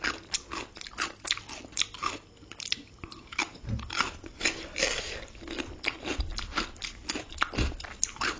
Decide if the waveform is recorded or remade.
recorded